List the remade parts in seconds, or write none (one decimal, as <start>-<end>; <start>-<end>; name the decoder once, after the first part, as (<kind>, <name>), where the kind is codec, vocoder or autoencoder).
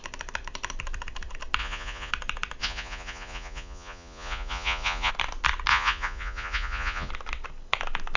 1.6-2.1 (vocoder, Vocos); 2.6-5.1; 5.7-7.1